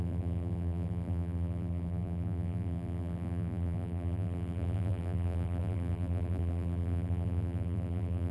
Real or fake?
fake